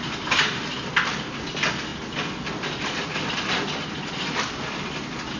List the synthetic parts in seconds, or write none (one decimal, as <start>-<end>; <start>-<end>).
none